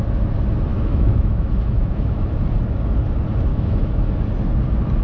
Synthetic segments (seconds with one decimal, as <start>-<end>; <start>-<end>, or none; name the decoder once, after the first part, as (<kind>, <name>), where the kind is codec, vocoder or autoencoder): 0.7-2.3 (autoencoder, DAC-VAE); 3.5-4.1